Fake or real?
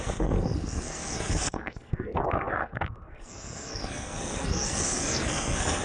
fake